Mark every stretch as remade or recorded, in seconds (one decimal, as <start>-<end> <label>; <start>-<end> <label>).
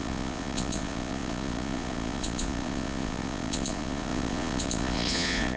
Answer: 0.0-5.6 remade